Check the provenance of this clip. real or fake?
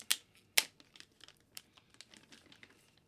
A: real